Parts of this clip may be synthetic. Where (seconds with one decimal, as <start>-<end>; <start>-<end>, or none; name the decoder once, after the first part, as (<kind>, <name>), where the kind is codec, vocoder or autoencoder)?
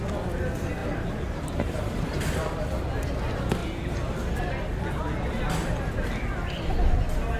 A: 0.8-2.2 (vocoder, BigVGAN v2)